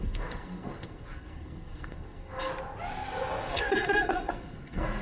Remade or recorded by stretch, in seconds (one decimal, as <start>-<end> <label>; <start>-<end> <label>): 0.0-2.5 remade; 2.5-3.5 recorded; 3.5-5.0 remade